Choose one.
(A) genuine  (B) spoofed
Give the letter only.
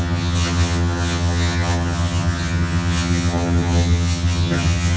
B